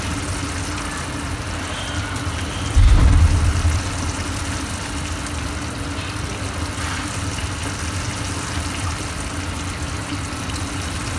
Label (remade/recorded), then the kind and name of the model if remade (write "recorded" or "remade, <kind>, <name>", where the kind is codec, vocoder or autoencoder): recorded